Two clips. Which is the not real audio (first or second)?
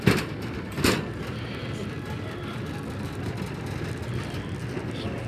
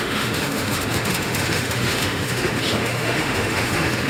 second